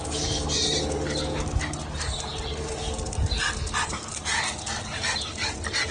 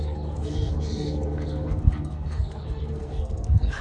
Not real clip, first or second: second